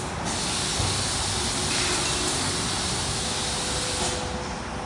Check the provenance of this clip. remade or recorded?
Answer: recorded